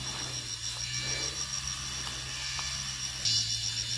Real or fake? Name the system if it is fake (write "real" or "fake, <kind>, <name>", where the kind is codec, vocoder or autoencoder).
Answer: real